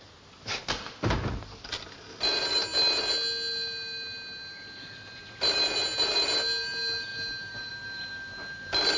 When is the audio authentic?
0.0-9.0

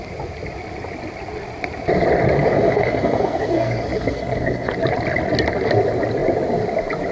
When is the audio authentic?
0.0-2.5; 4.7-7.1

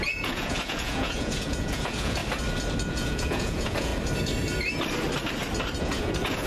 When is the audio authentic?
2.2-2.9; 3.9-5.8